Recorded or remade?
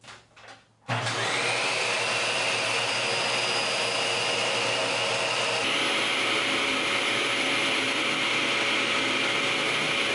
recorded